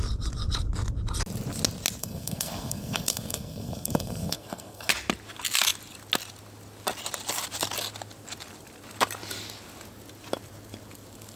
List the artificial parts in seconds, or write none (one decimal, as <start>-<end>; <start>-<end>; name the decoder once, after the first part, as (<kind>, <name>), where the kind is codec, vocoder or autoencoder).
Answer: 2.0-4.9 (codec, SNAC)